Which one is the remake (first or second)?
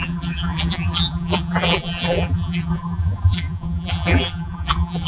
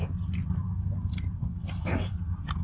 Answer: first